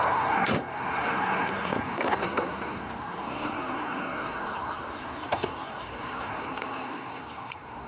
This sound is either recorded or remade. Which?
remade